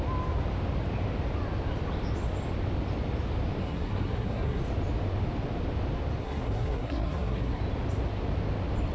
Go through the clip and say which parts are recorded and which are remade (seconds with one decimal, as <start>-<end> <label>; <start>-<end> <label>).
0.0-3.6 recorded; 3.6-4.6 remade; 4.6-6.2 recorded; 6.2-7.6 remade; 7.6-8.9 recorded